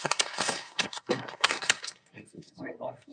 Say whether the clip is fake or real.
fake